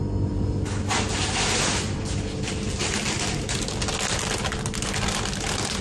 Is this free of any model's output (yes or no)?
yes